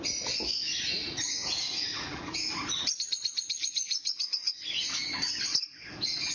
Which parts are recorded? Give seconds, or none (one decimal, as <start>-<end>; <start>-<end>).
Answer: 0.0-0.9; 4.5-6.3